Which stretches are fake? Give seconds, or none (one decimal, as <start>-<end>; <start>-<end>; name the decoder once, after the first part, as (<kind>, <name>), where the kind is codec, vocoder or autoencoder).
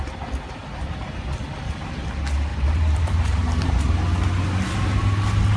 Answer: 2.5-3.9 (vocoder, BigVGAN v2)